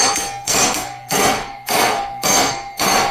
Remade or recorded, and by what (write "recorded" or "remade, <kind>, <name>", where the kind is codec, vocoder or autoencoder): remade, codec, SNAC